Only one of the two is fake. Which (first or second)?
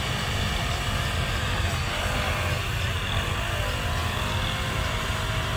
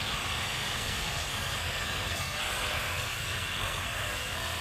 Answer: second